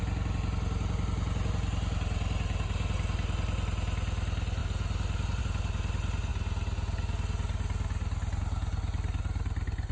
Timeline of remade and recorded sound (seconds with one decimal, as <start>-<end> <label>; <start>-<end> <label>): 0.0-9.9 recorded